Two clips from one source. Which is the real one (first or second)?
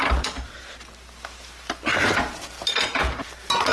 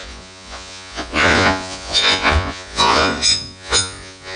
first